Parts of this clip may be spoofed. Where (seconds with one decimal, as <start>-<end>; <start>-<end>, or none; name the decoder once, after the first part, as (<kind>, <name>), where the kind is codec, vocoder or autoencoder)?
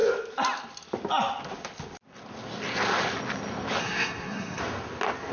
3.8-4.6 (codec, SNAC)